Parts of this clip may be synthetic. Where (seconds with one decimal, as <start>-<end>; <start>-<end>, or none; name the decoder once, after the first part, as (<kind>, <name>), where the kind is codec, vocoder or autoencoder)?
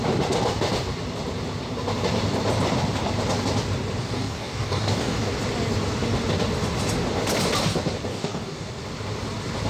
4.0-5.3 (codec, DAC); 8.1-8.7